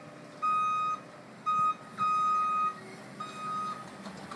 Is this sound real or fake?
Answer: real